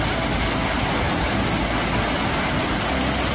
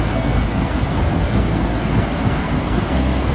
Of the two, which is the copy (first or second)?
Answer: second